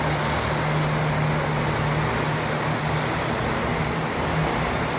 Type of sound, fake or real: real